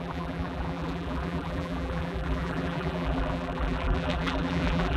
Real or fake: fake